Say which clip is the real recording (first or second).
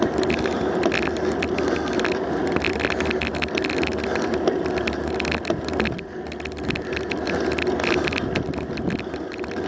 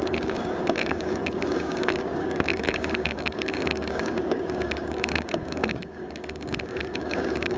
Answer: first